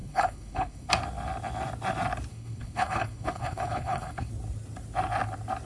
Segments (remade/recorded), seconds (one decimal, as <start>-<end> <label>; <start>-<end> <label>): 0.0-0.9 remade; 0.9-2.3 recorded; 2.3-4.3 remade; 4.3-5.7 recorded